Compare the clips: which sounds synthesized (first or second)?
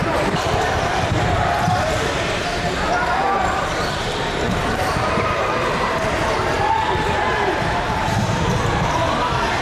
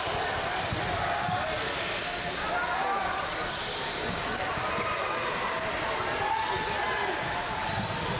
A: first